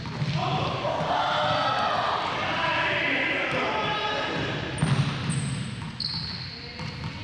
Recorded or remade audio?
recorded